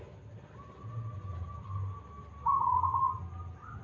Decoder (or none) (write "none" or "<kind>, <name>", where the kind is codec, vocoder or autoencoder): none